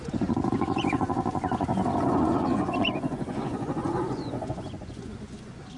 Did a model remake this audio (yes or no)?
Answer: yes